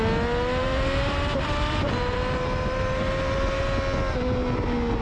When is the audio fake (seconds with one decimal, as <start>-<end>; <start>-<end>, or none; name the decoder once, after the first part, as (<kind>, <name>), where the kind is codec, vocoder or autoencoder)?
0.6-3.6 (vocoder, BigVGAN v2)

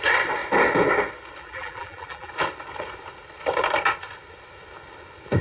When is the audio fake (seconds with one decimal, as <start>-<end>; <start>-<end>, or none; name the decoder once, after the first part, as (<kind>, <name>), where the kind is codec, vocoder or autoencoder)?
1.4-2.3 (vocoder, BigVGAN v2)

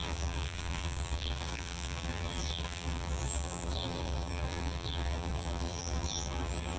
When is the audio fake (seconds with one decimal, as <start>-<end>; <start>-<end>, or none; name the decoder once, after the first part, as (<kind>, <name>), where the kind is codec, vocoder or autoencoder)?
0.0-6.8 (vocoder, BigVGAN v2)

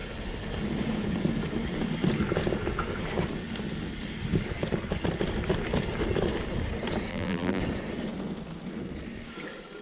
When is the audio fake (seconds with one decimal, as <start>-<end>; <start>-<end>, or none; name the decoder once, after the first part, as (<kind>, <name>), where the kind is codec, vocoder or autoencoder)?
7.1-7.6 (vocoder, BigVGAN v2)